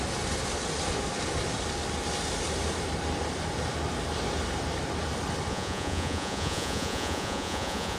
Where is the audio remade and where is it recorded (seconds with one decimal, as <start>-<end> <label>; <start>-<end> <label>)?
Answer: 0.0-5.5 recorded; 5.5-8.0 remade